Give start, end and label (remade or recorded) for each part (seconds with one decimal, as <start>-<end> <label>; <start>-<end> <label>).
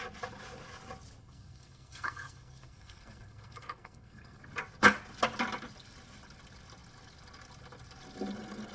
0.0-1.2 recorded; 1.2-4.4 remade; 4.4-8.7 recorded